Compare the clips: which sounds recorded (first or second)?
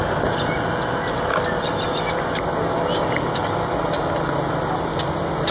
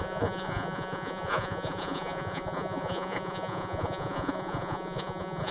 first